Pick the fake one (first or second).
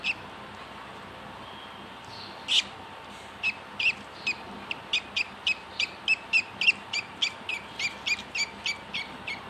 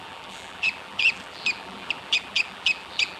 second